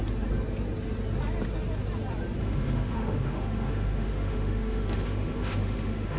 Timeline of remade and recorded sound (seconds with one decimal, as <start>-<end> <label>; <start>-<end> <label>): 0.0-2.4 recorded; 2.4-6.2 remade